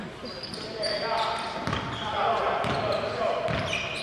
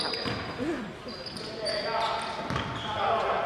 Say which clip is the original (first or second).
second